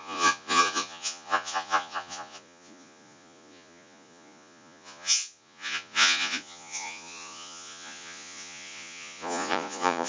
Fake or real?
fake